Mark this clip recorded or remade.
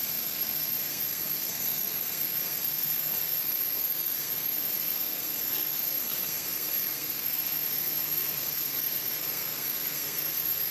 remade